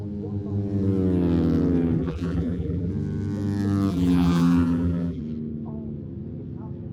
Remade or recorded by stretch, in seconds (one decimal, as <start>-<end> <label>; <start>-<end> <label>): 0.0-2.0 recorded; 2.0-2.9 remade; 2.9-3.9 recorded; 3.9-5.2 remade; 5.2-6.9 recorded